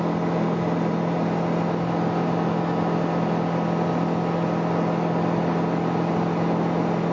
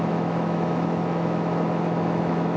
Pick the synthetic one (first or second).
second